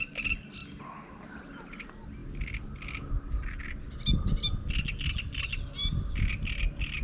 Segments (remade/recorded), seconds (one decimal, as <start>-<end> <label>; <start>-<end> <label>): 0.0-7.0 recorded